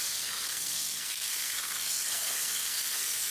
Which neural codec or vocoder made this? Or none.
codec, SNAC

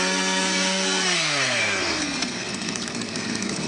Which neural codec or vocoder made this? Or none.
codec, SNAC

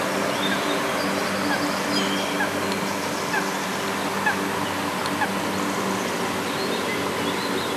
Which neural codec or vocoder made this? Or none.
none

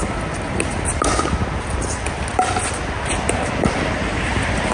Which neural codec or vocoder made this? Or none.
none